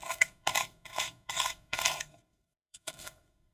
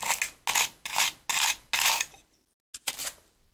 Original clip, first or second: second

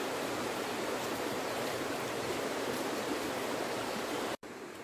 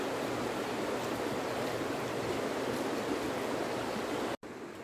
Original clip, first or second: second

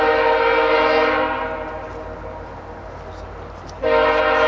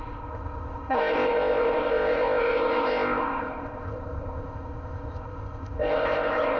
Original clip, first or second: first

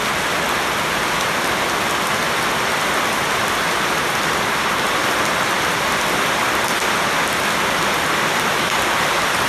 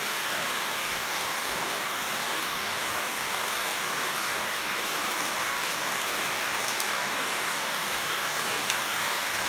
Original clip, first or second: first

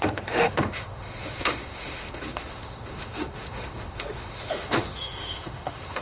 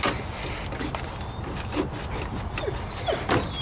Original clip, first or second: second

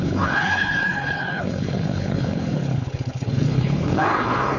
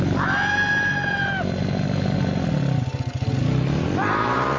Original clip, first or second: second